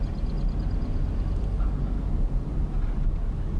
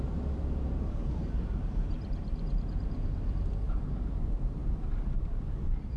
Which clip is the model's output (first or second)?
second